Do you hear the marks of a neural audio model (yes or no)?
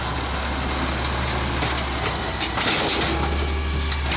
no